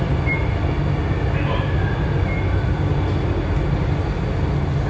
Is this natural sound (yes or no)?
yes